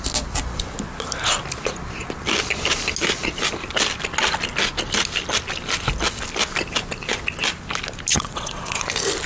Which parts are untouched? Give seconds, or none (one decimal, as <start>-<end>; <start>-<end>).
0.0-8.1; 8.8-9.3